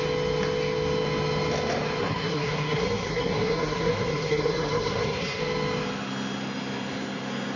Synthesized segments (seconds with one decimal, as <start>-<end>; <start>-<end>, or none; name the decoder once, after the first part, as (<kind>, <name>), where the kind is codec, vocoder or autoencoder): 2.0-5.4 (codec, SNAC)

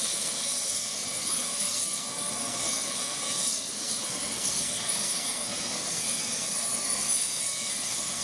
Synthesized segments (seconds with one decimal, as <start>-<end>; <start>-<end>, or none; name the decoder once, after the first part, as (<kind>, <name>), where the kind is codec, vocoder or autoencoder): 0.0-8.2 (codec, SNAC)

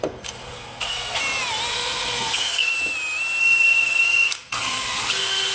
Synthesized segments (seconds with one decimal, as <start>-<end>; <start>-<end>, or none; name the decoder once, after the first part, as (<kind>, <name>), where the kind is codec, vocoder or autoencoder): 0.0-1.2 (codec, SNAC); 1.7-2.7; 3.4-5.5

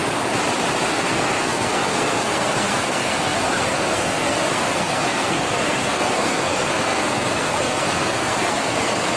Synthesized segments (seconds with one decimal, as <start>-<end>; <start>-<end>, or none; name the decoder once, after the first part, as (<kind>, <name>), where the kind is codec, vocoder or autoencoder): 0.9-9.2 (codec, SNAC)

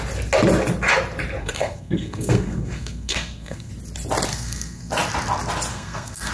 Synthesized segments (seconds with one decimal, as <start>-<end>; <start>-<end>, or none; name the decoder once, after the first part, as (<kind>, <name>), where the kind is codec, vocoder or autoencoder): 1.4-3.7 (codec, SNAC); 4.3-4.9; 5.7-6.3

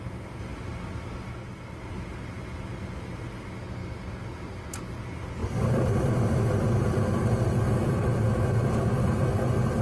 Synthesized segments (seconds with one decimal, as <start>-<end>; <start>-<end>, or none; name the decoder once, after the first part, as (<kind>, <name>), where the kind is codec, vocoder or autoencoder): none

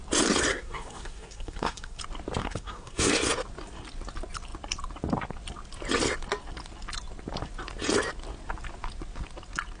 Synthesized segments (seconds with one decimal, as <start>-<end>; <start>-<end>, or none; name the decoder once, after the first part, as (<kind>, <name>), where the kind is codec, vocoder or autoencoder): 0.5-2.0 (codec, SNAC); 2.4-3.1

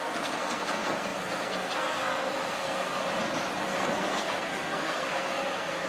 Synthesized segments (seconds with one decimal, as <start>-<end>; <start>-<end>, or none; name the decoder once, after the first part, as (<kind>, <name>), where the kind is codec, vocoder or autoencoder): 0.0-3.0 (codec, SNAC); 3.6-5.9